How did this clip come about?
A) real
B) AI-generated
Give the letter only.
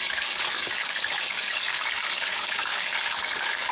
B